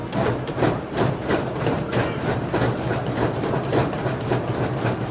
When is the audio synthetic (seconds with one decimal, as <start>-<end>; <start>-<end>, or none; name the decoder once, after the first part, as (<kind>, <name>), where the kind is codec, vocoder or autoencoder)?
0.0-2.4 (vocoder, BigVGAN v2); 4.5-5.1